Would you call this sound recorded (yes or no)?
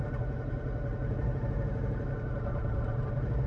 no